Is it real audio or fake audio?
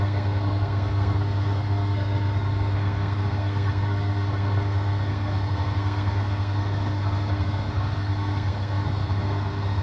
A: fake